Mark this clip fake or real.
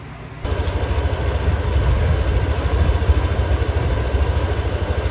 real